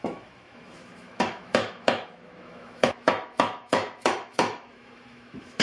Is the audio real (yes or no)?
no